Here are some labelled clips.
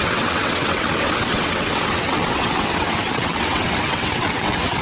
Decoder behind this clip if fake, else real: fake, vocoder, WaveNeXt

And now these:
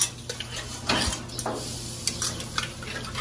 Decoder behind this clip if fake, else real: real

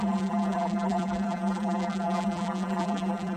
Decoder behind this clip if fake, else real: fake, vocoder, BigVGAN v2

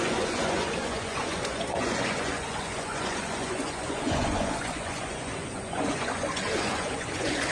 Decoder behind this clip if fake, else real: fake, vocoder, Vocos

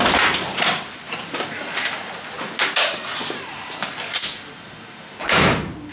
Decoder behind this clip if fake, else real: real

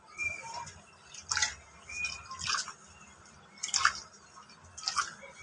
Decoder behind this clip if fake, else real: real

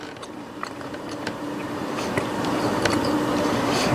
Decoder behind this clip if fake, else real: fake, vocoder, BigVGAN v2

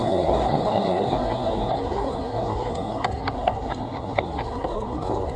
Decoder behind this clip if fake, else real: fake, codec, SNAC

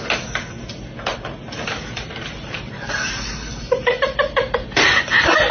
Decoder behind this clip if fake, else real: real